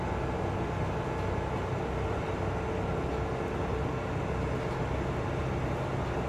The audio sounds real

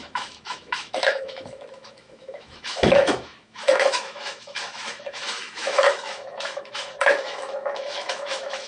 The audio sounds fake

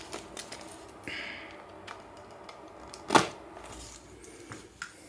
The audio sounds real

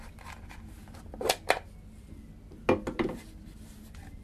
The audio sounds real